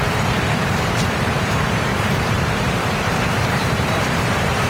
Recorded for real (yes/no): no